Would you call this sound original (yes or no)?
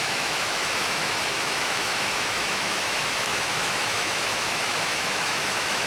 no